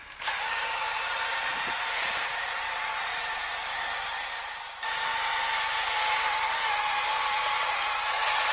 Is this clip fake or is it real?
fake